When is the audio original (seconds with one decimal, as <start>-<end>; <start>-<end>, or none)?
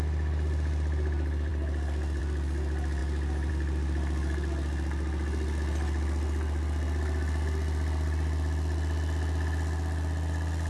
0.0-10.7